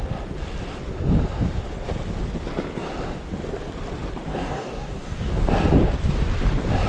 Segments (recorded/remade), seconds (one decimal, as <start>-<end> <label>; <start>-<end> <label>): 0.0-4.3 recorded; 4.3-5.3 remade; 5.3-6.9 recorded